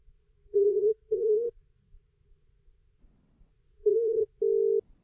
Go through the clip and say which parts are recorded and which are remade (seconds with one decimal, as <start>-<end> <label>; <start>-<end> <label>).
0.0-3.0 remade; 3.0-3.5 recorded; 3.5-4.4 remade; 4.4-5.0 recorded